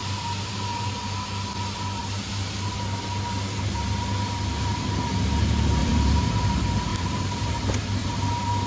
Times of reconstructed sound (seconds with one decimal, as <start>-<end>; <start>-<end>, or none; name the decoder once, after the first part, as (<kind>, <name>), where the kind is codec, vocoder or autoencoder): 5.8-6.3 (vocoder, BigVGAN v2); 6.9-7.5; 8.0-8.7